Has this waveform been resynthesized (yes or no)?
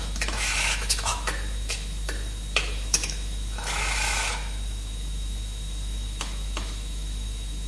yes